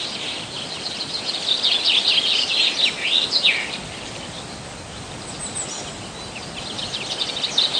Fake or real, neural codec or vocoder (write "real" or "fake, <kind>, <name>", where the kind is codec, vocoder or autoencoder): real